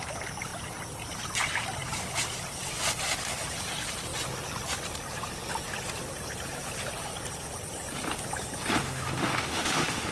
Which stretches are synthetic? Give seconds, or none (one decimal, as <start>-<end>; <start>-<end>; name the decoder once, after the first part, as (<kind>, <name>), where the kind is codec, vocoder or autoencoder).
8.8-10.1 (autoencoder, DAC-VAE)